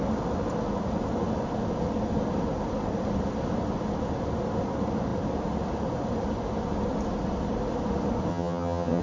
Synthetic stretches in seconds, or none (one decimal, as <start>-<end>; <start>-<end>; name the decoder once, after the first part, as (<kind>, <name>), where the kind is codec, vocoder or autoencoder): 8.3-9.0 (vocoder, HiFi-GAN)